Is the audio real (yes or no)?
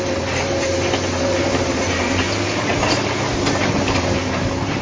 no